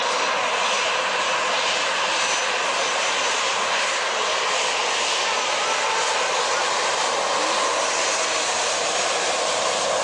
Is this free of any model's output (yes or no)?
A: yes